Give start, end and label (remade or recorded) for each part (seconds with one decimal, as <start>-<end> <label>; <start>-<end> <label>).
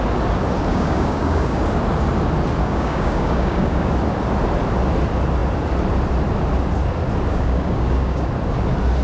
0.0-0.7 recorded; 0.7-1.6 remade; 1.6-2.6 recorded; 2.6-3.9 remade; 3.9-7.3 recorded; 7.3-8.3 remade; 8.3-9.0 recorded